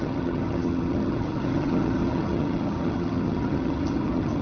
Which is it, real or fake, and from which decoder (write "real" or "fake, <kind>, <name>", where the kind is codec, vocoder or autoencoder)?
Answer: fake, vocoder, HiFi-GAN